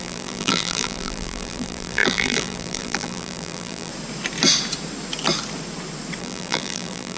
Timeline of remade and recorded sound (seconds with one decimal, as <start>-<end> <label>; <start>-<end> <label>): 0.0-3.9 remade; 3.9-6.2 recorded; 6.2-7.2 remade